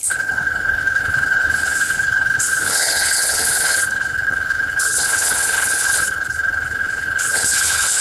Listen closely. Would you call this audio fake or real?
fake